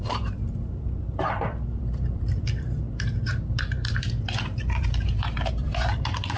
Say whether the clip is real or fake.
fake